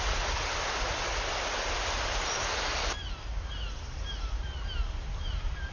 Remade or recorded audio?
recorded